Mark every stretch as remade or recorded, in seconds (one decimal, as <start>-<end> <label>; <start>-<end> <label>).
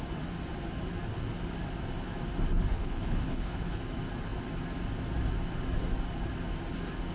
0.0-2.7 recorded; 2.7-3.8 remade; 3.8-7.1 recorded